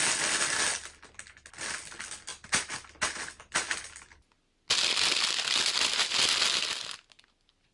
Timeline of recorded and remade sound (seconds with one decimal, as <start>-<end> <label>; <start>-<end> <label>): 0.0-7.7 recorded